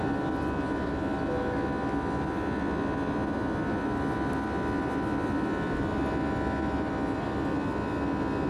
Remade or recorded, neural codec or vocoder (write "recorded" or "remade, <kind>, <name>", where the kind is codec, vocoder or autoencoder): recorded